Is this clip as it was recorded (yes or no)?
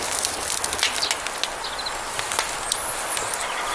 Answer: yes